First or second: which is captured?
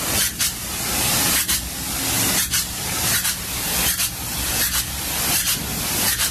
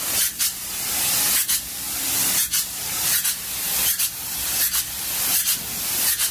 second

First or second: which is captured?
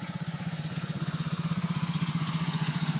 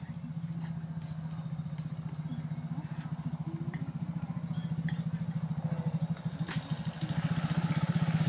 second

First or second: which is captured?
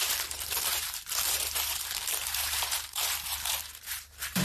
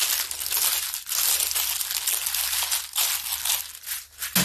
second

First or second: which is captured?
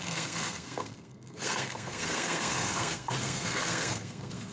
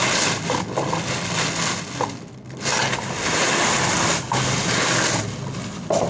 second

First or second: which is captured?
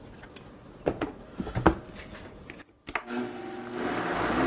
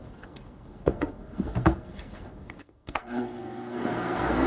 first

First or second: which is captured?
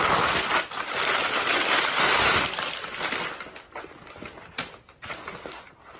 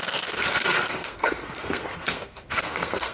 first